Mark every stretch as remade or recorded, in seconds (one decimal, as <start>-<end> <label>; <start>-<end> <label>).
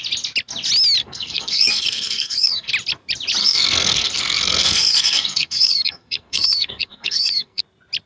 0.0-1.0 recorded; 1.0-2.7 remade; 2.7-3.4 recorded; 3.4-7.6 remade; 7.6-8.1 recorded